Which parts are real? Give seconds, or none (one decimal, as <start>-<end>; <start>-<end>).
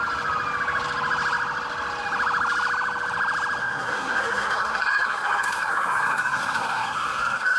0.0-3.6